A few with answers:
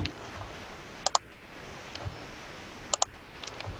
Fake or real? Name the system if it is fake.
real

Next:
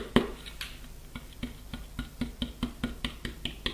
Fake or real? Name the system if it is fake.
real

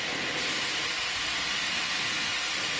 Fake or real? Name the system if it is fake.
real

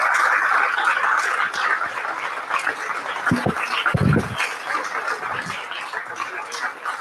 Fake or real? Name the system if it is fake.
real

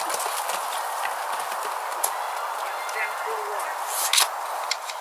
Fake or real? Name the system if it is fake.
real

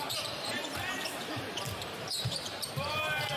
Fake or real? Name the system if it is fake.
fake, vocoder, BigVGAN v2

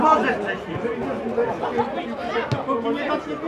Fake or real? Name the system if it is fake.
real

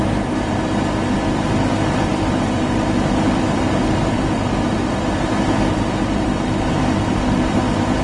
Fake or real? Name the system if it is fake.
fake, vocoder, BigVGAN v2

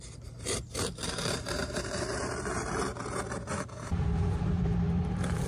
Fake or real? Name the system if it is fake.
fake, vocoder, BigVGAN v2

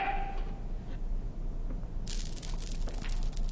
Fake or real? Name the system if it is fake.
real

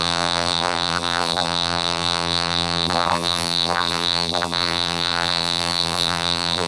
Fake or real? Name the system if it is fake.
fake, vocoder, BigVGAN v2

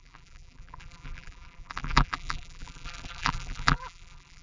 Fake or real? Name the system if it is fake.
fake, vocoder, BigVGAN v2